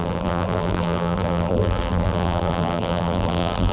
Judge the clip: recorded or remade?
remade